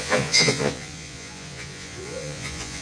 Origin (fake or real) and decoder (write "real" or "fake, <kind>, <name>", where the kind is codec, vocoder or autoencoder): fake, vocoder, Vocos